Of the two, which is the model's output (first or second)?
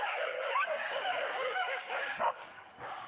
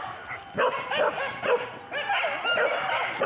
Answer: first